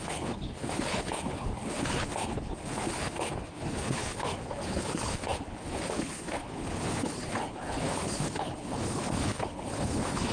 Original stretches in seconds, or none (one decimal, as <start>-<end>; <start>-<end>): none